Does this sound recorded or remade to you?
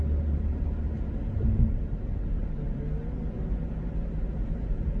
recorded